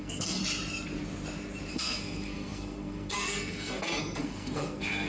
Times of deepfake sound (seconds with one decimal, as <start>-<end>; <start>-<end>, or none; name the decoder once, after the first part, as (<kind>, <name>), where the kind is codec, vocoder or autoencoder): 0.0-0.4 (codec, SNAC); 1.7-5.1